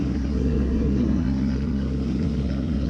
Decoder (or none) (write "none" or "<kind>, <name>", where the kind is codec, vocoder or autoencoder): codec, SNAC